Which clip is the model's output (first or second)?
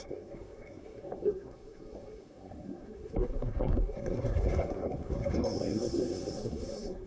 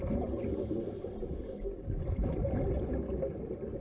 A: first